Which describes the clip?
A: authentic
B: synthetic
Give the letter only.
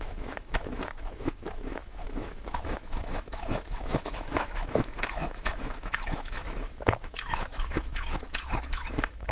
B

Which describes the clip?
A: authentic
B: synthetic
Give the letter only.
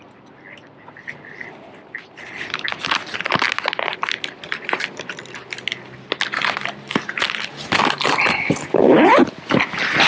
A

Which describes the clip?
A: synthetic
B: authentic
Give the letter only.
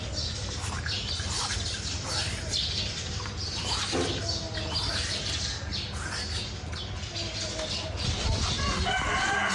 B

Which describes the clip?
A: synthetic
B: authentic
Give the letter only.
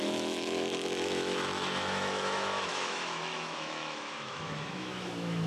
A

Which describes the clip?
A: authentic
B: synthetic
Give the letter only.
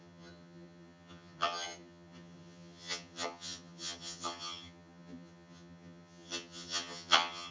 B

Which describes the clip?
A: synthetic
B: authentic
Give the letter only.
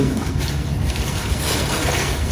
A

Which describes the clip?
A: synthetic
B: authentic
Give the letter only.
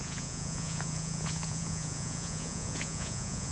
A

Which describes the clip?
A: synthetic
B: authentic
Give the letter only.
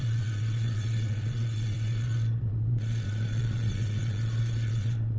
A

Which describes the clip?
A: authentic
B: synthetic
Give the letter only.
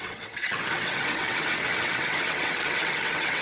B